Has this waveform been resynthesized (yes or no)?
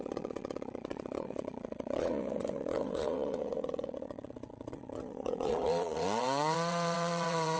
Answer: yes